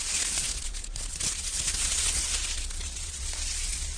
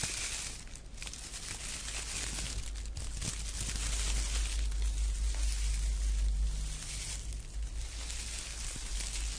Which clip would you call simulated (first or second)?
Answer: first